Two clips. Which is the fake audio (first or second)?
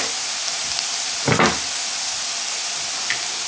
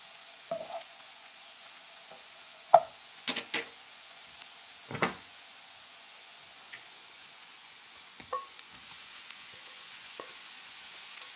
second